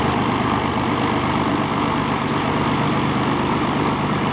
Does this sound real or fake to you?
real